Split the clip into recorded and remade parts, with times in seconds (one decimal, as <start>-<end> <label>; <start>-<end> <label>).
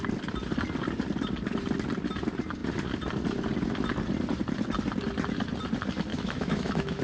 0.0-6.1 recorded; 6.1-7.0 remade